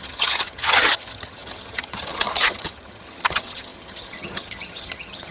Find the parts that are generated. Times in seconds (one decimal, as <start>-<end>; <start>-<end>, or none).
0.0-5.3